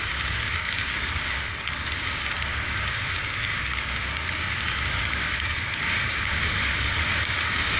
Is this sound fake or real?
fake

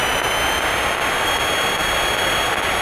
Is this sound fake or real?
real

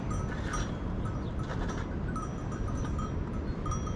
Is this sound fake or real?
real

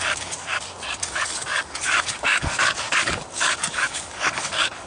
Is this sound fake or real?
fake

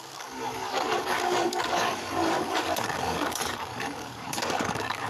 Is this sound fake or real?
fake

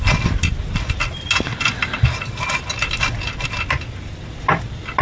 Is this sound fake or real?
real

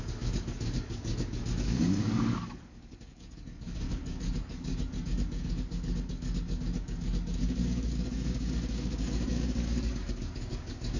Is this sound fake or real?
fake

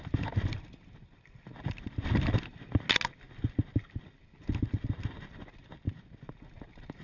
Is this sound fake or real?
real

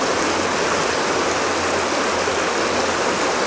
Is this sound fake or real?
real